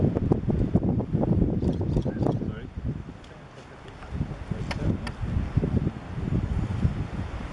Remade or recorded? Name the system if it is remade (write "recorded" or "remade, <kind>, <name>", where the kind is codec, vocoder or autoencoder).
recorded